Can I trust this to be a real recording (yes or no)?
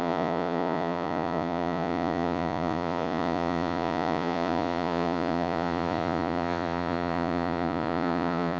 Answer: no